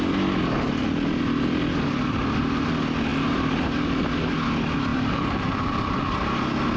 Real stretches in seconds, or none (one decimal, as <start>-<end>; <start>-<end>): 0.0-3.1; 4.0-4.9; 5.9-6.8